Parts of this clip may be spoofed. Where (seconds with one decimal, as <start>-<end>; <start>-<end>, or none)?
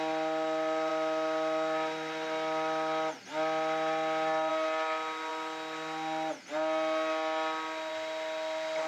none